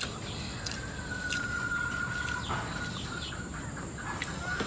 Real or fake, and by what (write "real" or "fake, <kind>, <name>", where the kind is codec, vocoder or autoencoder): real